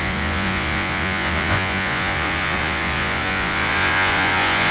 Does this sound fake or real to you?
fake